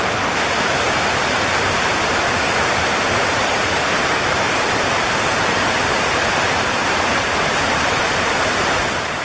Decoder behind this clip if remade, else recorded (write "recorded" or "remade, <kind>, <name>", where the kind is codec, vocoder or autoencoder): remade, vocoder, BigVGAN v2